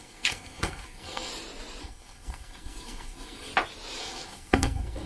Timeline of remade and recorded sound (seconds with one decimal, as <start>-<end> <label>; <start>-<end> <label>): 0.0-1.3 remade; 1.3-1.8 recorded; 1.8-3.5 remade; 3.5-4.0 recorded; 4.0-5.1 remade